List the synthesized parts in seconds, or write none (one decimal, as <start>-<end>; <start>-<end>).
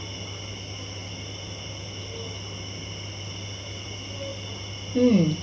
none